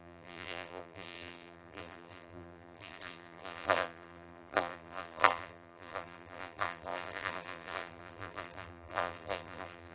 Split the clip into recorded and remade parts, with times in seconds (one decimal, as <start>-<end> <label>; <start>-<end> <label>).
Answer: 0.0-9.9 remade